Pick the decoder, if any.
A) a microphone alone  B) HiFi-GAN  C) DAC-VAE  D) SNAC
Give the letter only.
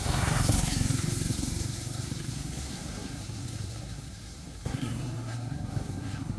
D